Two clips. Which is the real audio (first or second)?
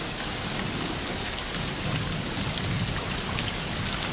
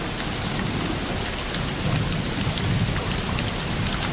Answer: second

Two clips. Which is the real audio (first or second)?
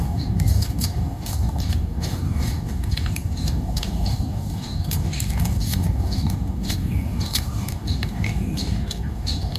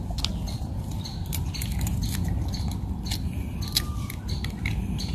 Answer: second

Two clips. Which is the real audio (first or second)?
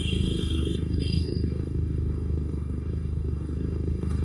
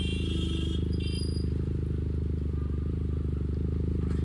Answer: second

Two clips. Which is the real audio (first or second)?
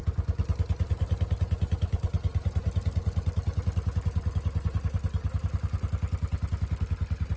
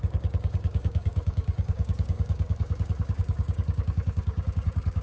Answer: first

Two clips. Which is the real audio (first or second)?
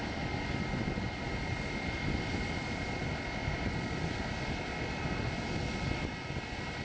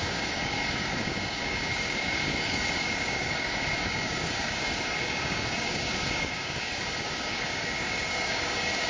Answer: first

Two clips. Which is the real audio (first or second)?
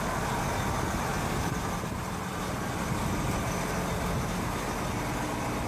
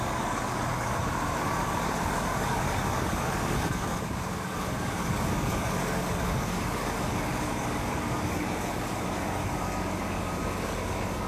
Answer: first